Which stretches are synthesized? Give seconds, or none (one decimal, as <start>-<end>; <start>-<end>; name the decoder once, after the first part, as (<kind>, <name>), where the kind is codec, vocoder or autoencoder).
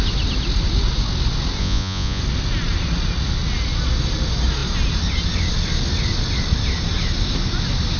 1.6-2.2 (vocoder, Vocos)